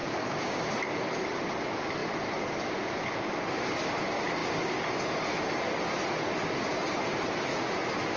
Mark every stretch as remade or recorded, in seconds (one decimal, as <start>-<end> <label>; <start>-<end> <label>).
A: 0.0-0.6 remade; 0.6-8.2 recorded